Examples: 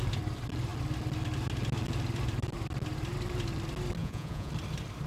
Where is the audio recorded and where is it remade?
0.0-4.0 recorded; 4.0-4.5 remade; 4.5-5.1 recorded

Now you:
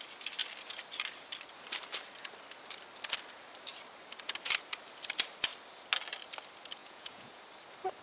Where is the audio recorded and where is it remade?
0.0-6.8 recorded; 6.8-7.4 remade; 7.4-8.0 recorded